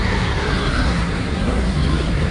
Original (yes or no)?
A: no